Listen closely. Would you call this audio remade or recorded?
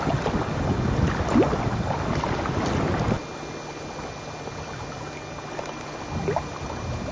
recorded